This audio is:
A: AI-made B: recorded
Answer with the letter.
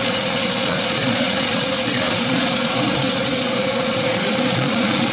A